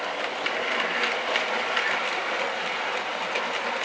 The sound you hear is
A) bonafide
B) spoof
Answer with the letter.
A